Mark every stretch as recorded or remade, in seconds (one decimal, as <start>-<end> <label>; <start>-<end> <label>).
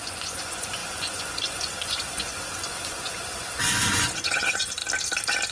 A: 0.0-4.8 remade; 4.8-5.5 recorded